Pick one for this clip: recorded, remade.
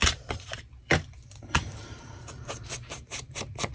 remade